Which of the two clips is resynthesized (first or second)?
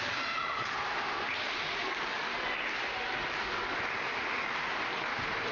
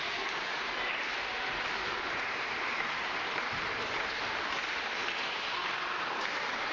second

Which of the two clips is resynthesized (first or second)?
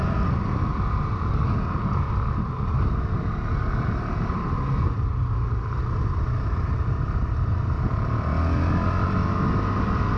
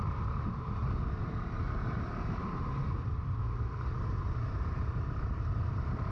second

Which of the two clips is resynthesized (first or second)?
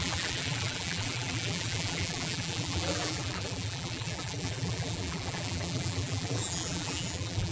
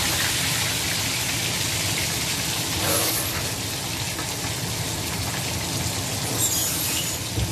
first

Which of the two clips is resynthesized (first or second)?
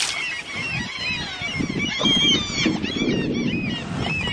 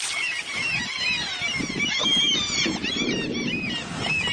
second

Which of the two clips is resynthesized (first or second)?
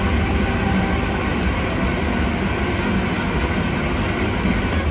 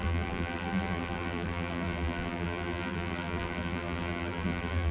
second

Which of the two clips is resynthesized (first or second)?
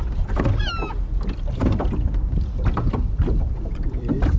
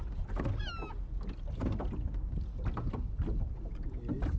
first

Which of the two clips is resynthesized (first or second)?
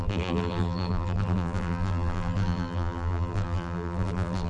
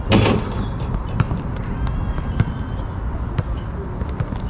first